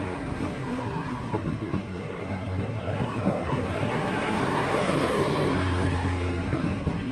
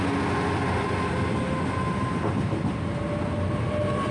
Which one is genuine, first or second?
second